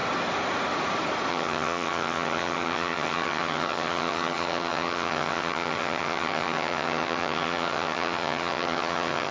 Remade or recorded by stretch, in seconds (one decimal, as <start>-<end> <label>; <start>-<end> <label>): 0.0-1.3 recorded; 1.3-9.3 remade